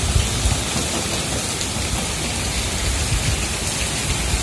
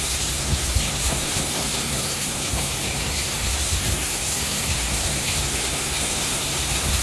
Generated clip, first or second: second